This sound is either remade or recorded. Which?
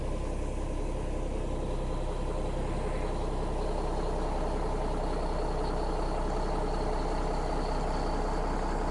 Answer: recorded